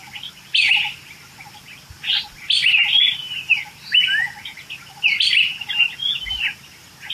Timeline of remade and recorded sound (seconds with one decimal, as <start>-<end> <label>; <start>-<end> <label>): 0.0-7.1 recorded